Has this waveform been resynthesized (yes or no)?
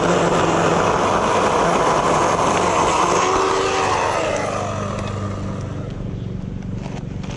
no